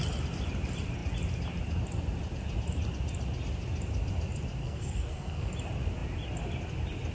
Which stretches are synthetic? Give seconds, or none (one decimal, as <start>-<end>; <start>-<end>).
4.6-5.5